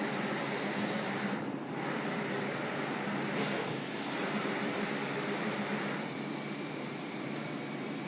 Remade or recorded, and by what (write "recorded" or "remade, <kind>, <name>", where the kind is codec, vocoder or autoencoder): remade, vocoder, BigVGAN v2